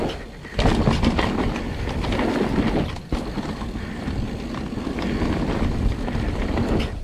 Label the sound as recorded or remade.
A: recorded